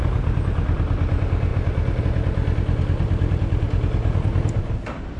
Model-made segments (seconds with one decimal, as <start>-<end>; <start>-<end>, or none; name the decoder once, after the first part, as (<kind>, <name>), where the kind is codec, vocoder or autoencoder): none